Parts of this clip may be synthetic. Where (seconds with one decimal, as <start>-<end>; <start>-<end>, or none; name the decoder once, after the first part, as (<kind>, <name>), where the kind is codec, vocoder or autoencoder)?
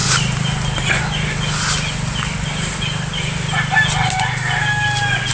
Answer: none